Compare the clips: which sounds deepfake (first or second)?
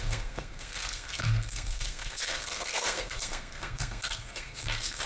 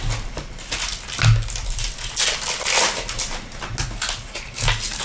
first